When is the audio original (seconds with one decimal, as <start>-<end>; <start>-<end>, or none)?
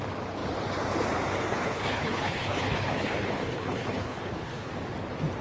0.0-1.5; 4.7-5.4